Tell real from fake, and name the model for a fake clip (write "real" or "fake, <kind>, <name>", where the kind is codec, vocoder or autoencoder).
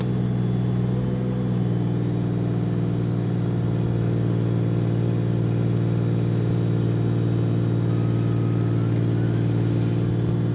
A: real